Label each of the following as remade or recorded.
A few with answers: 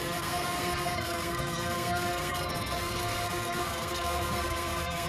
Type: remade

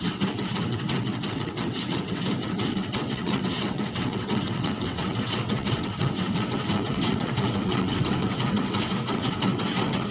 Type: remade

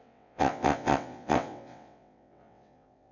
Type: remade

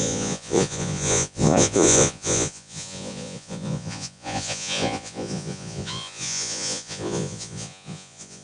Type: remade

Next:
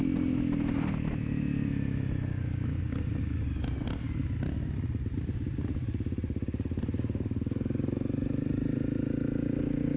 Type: recorded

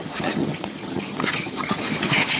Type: remade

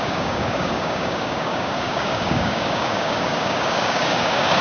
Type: remade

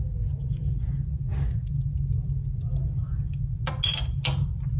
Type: recorded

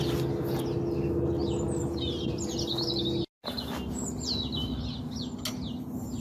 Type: recorded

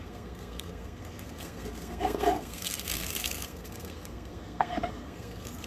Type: remade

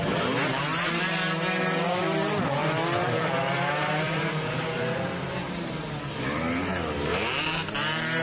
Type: remade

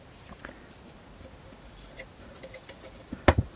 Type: recorded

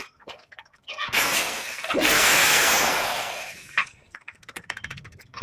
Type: remade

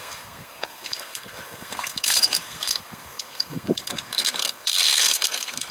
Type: remade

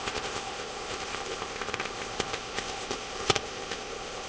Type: remade